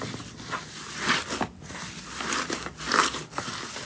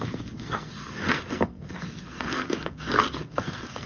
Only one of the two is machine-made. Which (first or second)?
second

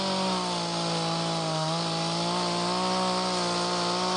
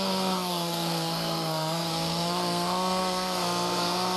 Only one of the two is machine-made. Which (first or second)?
second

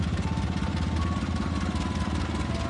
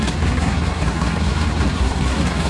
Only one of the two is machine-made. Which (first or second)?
second